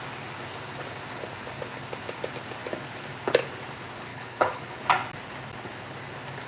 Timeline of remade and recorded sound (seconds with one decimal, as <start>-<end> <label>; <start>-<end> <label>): 0.0-4.1 recorded; 4.1-4.6 remade; 4.6-6.5 recorded